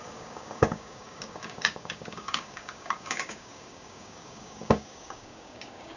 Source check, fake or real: fake